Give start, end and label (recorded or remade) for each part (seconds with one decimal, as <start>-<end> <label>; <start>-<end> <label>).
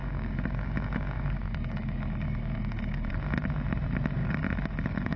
0.0-3.1 remade; 3.1-4.2 recorded; 4.2-5.2 remade